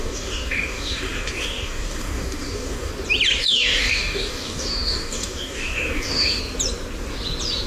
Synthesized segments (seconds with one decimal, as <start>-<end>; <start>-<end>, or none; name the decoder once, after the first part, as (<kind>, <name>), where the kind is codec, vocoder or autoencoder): 0.0-2.9 (codec, DAC); 3.4-6.4